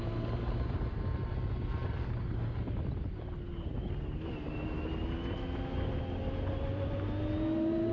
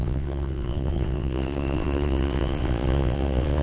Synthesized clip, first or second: second